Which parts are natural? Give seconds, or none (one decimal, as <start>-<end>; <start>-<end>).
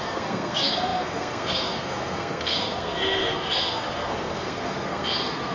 none